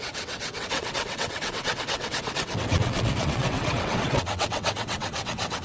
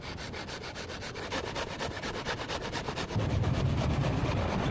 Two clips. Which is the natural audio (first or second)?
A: second